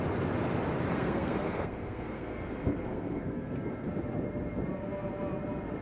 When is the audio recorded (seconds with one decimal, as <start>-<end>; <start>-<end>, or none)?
0.0-0.9; 3.9-5.8